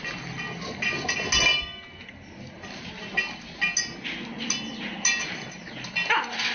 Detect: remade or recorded recorded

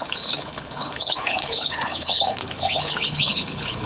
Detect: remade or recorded remade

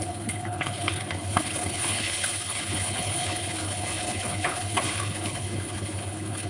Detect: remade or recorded remade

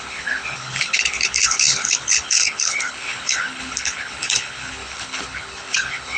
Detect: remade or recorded remade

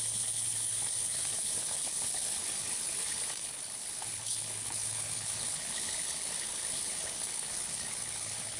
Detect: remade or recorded remade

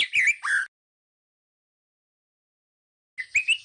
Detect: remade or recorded recorded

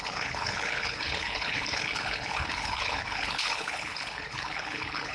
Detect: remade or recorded remade